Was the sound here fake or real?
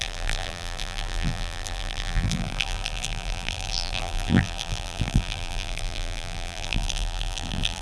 fake